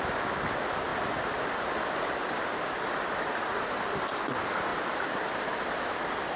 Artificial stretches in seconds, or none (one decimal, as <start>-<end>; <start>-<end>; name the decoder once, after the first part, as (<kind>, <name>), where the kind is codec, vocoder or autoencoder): 4.7-5.3 (vocoder, BigVGAN v2)